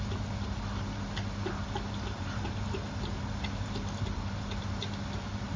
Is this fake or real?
real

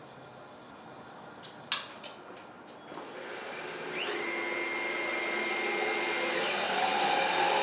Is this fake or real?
real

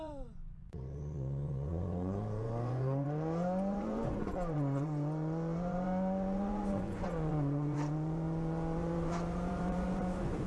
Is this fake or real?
fake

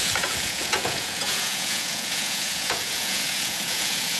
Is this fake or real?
fake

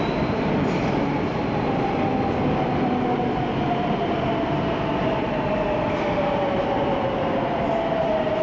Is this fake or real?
real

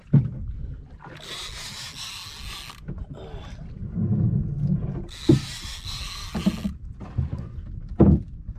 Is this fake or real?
real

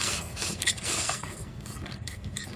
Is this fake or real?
fake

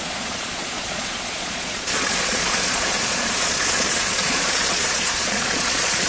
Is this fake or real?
fake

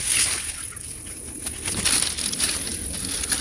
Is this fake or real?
real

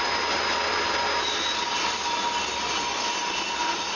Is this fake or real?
real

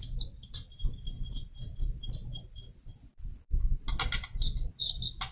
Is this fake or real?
real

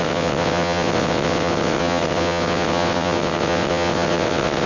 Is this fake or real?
fake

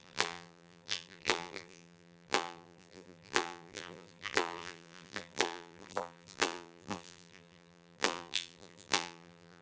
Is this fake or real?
fake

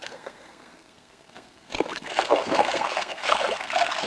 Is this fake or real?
fake